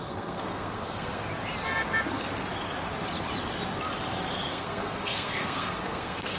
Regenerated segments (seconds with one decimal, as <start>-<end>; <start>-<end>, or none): 0.0-1.2; 4.4-6.4